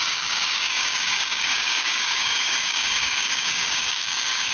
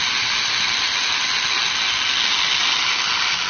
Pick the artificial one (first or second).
first